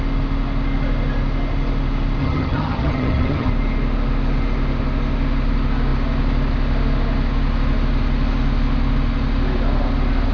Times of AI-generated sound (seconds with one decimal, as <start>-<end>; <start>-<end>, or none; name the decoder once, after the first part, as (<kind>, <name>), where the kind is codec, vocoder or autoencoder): 2.2-3.5 (vocoder, HiFi-GAN)